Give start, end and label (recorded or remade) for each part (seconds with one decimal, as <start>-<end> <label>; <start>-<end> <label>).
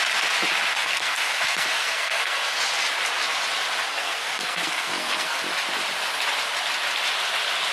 0.0-0.7 recorded; 0.7-2.6 remade; 2.6-3.9 recorded; 3.9-5.4 remade; 5.4-7.7 recorded